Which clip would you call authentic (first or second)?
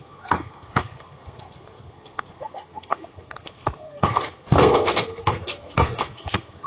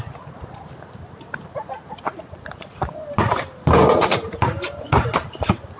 second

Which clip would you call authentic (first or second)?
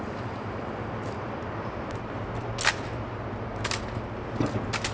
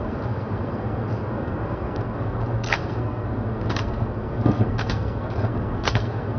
first